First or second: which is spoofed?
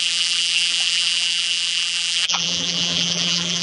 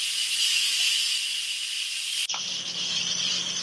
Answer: first